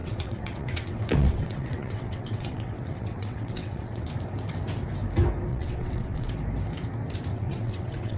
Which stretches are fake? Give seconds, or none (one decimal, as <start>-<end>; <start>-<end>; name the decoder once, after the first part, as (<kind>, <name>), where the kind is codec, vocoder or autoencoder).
0.0-4.1 (vocoder, WaveNeXt); 5.5-6.3; 7.3-8.2